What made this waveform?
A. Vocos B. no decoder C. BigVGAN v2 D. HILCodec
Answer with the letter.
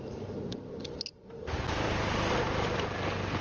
B